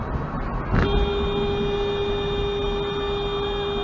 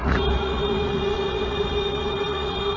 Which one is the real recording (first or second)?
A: first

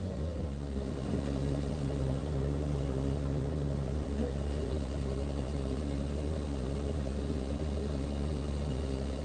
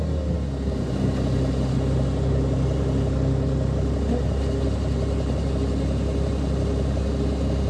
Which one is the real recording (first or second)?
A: second